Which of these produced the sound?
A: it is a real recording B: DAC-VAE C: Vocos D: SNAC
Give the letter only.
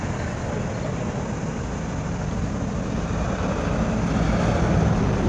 A